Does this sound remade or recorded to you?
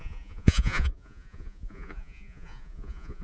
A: remade